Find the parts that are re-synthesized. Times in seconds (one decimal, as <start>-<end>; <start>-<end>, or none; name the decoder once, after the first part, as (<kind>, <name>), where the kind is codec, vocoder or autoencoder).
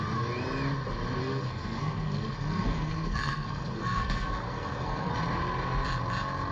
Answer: 1.2-5.1 (codec, SNAC)